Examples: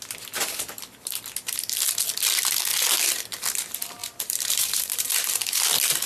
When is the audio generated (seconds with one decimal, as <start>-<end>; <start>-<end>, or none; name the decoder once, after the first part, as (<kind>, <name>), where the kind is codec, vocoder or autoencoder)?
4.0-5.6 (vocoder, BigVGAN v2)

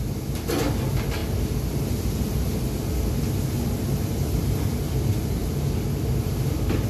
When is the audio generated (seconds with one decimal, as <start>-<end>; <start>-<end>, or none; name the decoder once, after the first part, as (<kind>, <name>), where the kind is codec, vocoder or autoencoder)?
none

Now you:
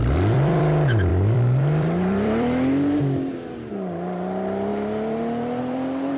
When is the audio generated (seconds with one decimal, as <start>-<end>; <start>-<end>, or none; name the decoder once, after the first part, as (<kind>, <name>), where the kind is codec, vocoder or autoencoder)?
0.0-6.2 (vocoder, BigVGAN v2)